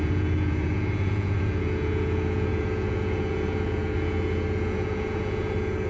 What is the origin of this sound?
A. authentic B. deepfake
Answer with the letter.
B